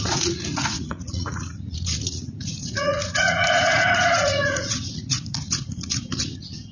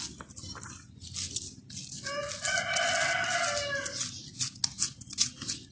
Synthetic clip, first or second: first